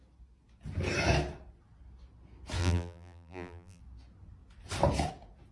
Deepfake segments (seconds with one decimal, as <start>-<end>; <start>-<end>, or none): 2.6-3.8